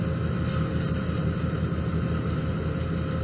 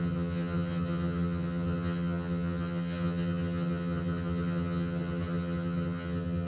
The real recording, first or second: first